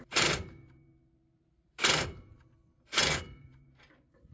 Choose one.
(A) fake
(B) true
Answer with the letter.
A